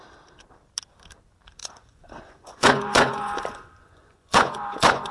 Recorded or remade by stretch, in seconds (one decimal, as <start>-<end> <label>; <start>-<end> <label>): 0.0-1.6 recorded; 1.6-5.1 remade